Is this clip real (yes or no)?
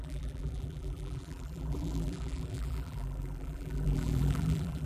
no